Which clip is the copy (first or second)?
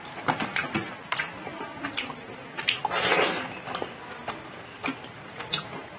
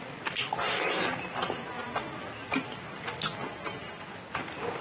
first